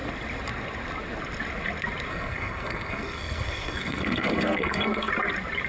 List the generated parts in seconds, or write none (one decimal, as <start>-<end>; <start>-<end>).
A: 2.1-5.1